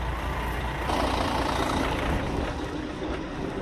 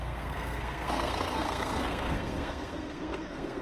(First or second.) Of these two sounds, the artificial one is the second